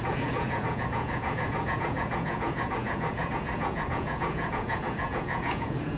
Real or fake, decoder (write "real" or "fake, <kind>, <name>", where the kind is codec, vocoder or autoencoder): fake, vocoder, Vocos